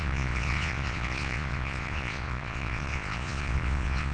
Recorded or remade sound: remade